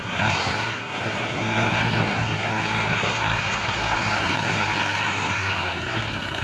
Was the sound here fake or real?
fake